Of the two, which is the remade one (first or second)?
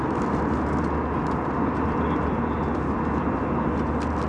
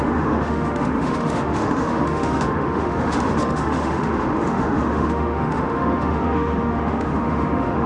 second